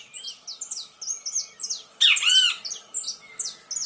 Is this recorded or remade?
recorded